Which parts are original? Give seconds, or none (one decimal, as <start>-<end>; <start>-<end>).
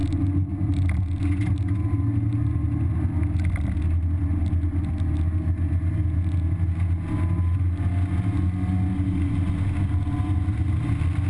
0.0-11.3